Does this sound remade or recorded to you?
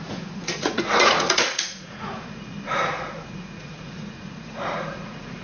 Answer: remade